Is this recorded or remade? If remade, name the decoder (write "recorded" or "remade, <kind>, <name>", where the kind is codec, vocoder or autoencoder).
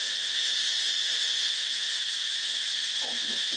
remade, autoencoder, DAC-VAE